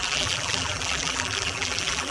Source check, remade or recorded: remade